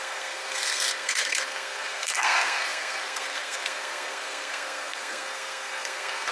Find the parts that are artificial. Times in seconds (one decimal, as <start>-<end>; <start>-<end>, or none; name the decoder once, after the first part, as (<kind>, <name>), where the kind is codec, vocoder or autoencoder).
0.0-6.3 (codec, SNAC)